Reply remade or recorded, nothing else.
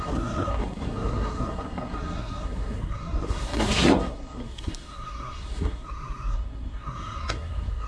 remade